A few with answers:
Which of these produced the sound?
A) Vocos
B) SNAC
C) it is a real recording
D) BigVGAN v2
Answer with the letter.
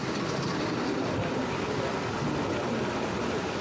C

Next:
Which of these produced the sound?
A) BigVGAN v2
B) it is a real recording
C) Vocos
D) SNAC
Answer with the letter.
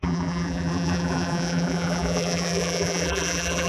A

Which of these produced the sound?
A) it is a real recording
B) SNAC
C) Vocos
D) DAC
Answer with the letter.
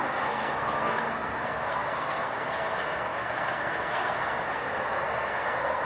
B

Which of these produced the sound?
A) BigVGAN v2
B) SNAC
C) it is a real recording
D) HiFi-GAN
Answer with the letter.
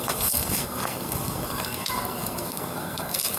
B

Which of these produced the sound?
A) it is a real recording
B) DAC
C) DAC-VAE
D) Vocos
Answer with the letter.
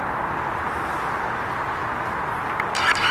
A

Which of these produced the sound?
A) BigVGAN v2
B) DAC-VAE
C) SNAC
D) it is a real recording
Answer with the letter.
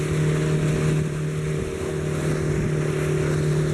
D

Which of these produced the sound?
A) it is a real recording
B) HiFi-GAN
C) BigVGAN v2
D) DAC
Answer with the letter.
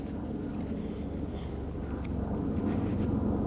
A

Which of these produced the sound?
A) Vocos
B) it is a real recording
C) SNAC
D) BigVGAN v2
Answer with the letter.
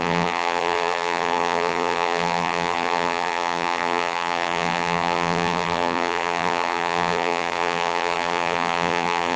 D